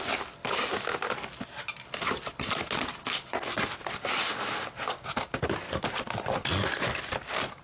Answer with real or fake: real